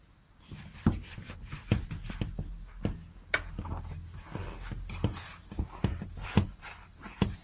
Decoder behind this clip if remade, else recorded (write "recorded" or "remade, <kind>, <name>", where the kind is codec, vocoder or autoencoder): recorded